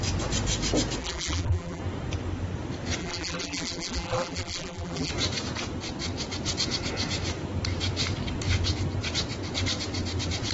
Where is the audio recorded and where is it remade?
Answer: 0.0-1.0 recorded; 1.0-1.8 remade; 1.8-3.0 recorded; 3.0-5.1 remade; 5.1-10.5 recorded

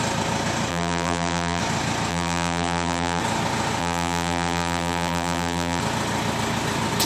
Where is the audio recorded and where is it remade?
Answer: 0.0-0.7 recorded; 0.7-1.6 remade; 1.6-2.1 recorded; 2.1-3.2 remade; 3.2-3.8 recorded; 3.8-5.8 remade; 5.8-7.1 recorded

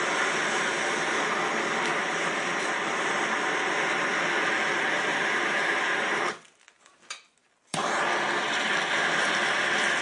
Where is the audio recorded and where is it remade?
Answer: 0.0-2.0 recorded; 2.0-3.1 remade; 3.1-5.1 recorded; 5.1-7.0 remade; 7.0-10.0 recorded